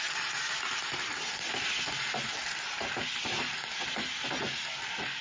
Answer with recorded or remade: recorded